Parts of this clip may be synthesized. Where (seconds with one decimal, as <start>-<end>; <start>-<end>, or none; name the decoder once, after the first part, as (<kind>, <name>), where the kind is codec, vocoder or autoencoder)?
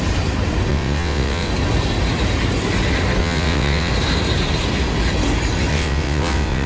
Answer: 0.7-1.5 (vocoder, WaveNeXt); 3.2-3.9; 5.7-6.7